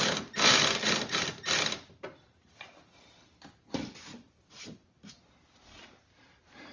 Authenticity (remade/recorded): recorded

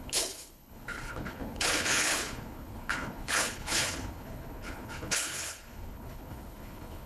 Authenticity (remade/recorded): remade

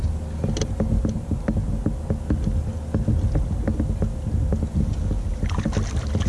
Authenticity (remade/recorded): recorded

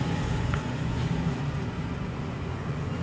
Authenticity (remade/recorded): remade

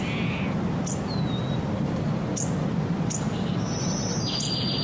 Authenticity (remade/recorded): recorded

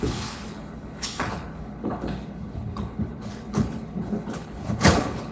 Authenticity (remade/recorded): remade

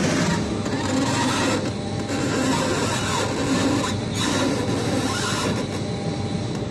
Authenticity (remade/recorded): recorded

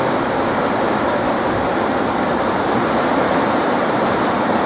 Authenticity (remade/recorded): remade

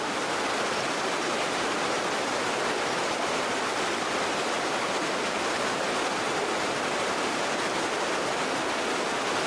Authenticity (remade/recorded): recorded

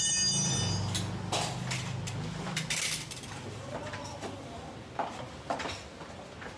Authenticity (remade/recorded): recorded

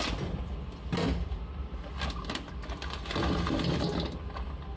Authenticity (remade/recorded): recorded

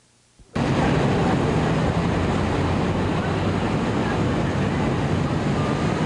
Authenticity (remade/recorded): recorded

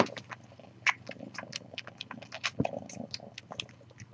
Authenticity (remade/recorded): recorded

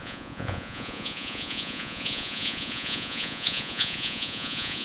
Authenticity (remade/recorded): remade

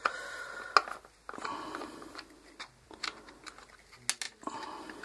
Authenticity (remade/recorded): recorded